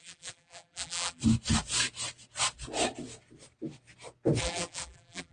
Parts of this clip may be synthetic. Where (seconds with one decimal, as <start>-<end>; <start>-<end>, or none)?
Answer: 0.0-1.2; 4.4-5.3